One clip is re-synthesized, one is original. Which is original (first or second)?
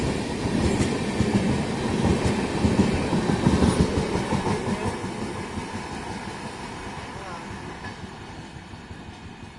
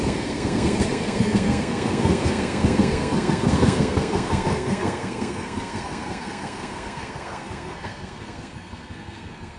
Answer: first